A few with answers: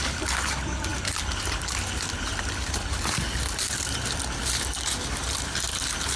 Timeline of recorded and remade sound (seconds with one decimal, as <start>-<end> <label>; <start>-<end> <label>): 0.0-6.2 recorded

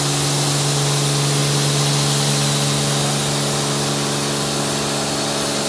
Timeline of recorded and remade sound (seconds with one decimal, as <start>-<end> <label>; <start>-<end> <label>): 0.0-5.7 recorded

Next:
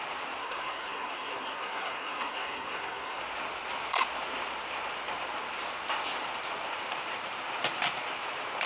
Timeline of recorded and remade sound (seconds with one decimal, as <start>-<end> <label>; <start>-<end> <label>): 0.0-0.4 recorded; 0.4-3.2 remade; 3.2-8.7 recorded

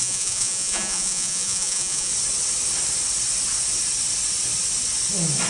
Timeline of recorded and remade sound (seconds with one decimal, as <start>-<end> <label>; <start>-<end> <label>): 0.0-2.1 remade; 2.1-5.5 recorded

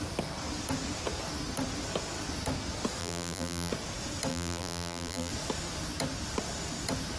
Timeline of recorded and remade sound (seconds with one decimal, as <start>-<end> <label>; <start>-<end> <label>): 0.0-3.0 recorded; 3.0-3.7 remade; 3.7-4.3 recorded; 4.3-5.3 remade; 5.3-7.2 recorded

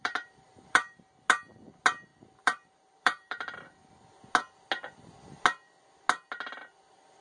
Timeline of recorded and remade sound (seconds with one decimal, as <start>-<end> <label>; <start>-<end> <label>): 0.0-1.0 remade; 1.0-2.1 recorded; 2.1-3.9 remade; 3.9-7.2 recorded